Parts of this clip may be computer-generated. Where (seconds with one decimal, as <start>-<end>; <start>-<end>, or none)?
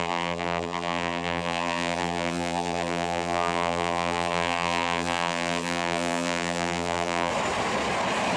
0.0-7.3